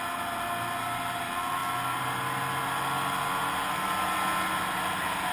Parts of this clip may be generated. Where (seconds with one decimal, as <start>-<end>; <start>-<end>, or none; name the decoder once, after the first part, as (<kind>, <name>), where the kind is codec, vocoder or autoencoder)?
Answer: none